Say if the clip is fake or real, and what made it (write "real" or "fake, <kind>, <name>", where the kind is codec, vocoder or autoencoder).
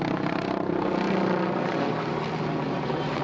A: fake, vocoder, BigVGAN v2